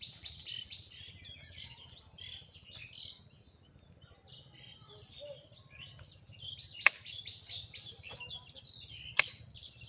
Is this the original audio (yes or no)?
yes